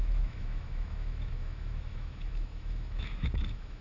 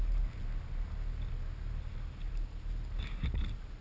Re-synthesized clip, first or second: first